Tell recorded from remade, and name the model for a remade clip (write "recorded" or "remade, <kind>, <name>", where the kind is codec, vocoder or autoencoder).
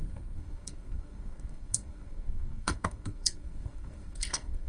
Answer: remade, codec, SNAC